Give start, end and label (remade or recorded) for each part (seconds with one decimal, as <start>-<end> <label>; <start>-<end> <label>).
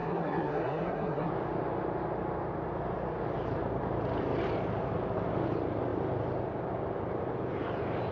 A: 0.0-1.3 remade; 1.3-8.1 recorded